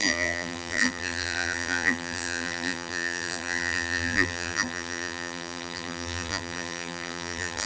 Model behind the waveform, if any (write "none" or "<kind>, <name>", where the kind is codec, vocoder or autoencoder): vocoder, BigVGAN v2